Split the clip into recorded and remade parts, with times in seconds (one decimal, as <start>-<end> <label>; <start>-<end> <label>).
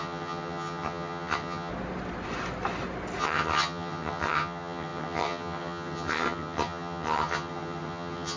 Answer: 0.0-1.7 remade; 1.7-3.2 recorded; 3.2-8.4 remade